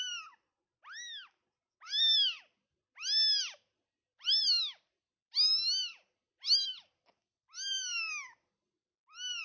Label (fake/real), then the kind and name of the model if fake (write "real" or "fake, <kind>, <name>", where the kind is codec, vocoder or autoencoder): real